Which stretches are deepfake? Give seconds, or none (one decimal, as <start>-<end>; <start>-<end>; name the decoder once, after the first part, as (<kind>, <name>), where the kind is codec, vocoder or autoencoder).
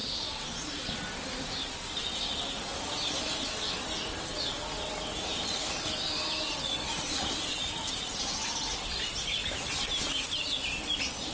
0.0-0.9 (vocoder, BigVGAN v2); 6.9-8.5